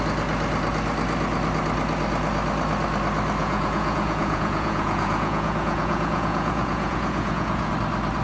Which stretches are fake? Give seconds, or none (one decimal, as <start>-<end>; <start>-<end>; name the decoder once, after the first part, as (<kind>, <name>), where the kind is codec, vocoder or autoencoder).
3.4-7.7 (vocoder, Vocos)